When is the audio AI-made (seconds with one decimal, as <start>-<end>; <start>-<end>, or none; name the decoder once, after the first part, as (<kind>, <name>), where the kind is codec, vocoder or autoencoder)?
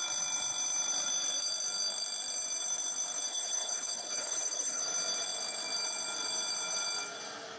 3.3-4.8 (codec, HILCodec)